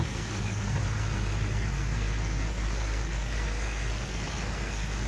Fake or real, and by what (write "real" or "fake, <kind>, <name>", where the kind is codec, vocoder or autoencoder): fake, codec, SNAC